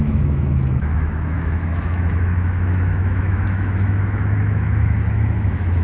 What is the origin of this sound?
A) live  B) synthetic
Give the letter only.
B